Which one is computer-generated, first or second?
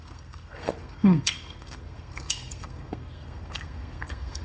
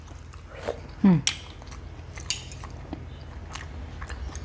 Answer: first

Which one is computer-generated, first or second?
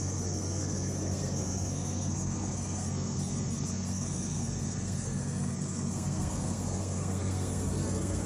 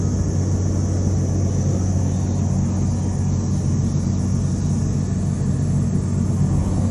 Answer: first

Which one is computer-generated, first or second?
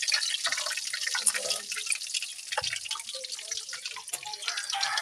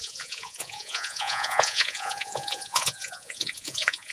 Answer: second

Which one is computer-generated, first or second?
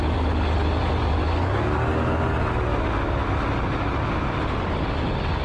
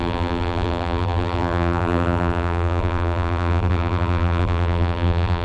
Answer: second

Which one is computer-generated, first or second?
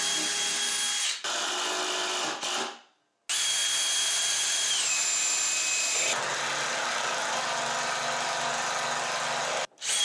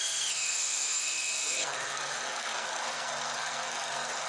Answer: second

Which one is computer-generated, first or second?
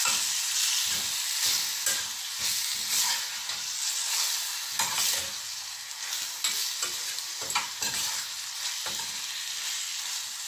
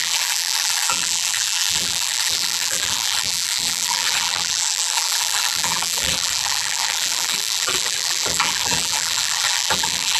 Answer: second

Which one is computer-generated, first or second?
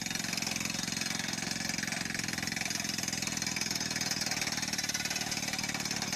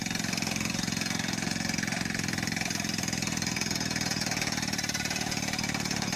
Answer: second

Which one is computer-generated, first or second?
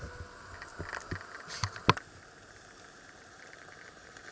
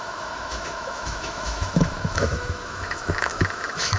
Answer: second